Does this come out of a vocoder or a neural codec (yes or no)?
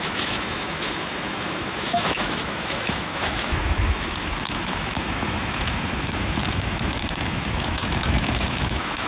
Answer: yes